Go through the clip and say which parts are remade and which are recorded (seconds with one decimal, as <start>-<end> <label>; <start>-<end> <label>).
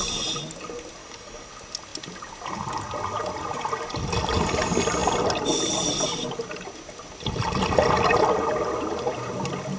0.0-1.0 recorded; 1.0-1.5 remade; 1.5-9.8 recorded